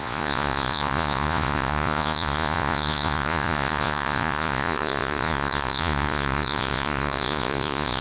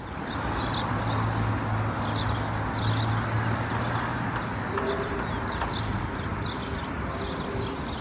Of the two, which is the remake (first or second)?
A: first